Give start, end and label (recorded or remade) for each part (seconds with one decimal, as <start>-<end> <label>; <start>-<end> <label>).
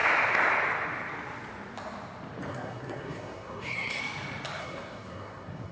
0.0-2.5 recorded; 2.5-4.0 remade; 4.0-4.6 recorded; 4.6-5.7 remade